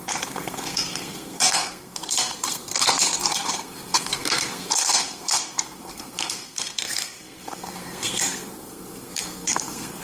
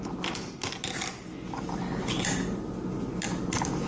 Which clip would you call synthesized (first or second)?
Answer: first